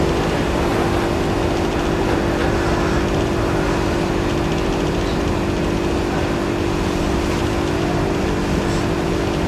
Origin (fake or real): real